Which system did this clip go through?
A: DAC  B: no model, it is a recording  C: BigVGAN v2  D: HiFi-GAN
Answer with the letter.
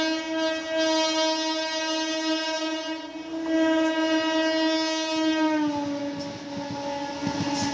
B